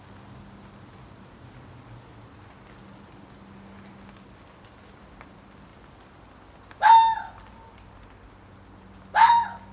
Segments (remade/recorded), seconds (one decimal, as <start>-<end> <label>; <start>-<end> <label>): 0.0-9.7 recorded

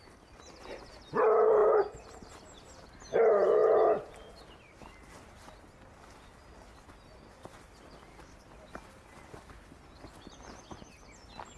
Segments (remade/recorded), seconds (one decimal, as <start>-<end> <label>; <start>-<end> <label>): 0.0-11.6 recorded

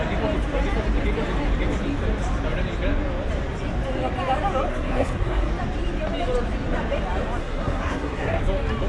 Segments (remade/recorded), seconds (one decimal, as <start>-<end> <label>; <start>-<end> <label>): 0.0-4.7 recorded; 4.7-5.5 remade; 5.5-7.4 recorded; 7.4-8.4 remade; 8.4-8.9 recorded

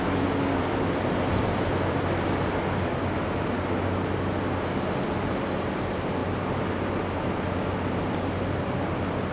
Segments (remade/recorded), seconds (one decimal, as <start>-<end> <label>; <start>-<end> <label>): 0.0-9.3 recorded